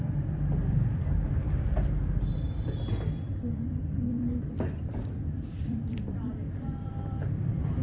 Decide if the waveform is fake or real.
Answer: fake